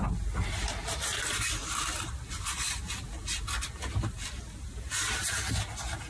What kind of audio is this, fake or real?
real